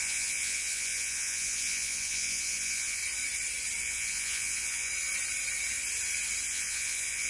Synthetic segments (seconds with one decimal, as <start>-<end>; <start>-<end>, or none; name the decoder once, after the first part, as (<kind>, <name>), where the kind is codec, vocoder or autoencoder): 0.0-3.0 (vocoder, Vocos); 3.8-4.9; 6.5-7.3